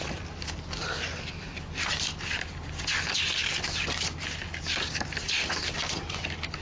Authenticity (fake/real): real